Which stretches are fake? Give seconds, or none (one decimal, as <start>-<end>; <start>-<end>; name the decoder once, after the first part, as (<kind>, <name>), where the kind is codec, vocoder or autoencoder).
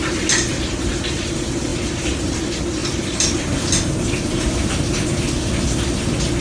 none